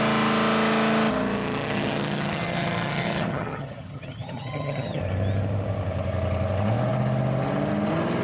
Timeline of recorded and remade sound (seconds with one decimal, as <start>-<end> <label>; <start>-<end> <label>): 0.0-1.1 recorded; 1.1-5.0 remade; 5.0-8.2 recorded